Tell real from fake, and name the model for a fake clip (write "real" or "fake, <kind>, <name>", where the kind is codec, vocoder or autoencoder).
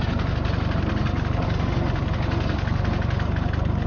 real